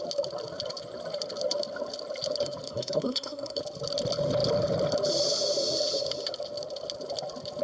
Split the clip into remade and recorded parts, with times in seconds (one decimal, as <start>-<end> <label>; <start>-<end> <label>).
0.0-2.7 recorded; 2.7-3.6 remade; 3.6-7.6 recorded